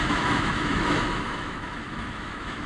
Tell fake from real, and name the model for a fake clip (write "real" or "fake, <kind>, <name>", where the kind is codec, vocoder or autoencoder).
fake, autoencoder, DAC-VAE